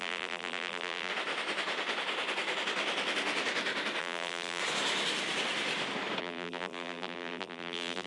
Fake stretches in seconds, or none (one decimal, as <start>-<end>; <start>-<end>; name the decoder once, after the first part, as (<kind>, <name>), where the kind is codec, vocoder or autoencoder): 0.0-1.1 (vocoder, BigVGAN v2); 4.0-4.6; 6.2-8.1